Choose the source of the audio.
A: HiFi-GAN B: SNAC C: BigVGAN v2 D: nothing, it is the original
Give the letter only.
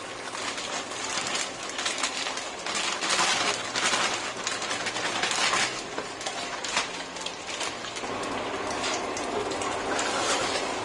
D